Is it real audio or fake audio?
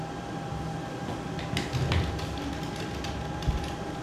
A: real